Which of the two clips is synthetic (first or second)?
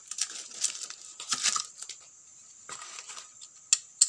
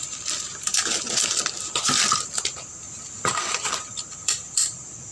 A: second